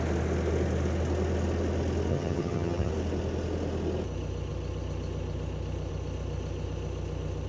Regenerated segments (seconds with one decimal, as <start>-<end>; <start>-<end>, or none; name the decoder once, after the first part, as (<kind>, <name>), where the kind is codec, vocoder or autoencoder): 2.1-2.9 (vocoder, HiFi-GAN)